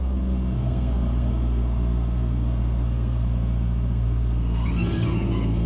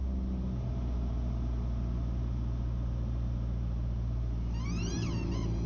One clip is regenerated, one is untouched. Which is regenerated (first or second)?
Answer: first